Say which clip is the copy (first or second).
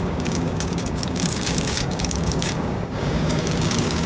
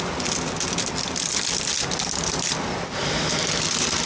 first